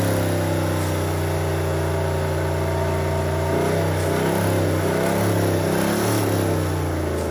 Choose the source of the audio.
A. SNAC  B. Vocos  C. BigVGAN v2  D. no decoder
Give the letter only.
D